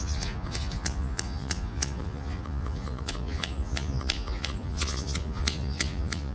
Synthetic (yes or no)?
yes